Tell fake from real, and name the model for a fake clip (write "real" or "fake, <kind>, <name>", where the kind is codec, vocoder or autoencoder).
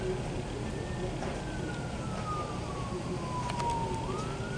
real